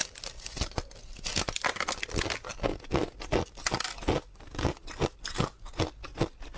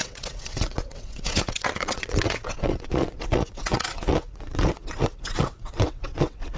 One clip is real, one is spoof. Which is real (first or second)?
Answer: first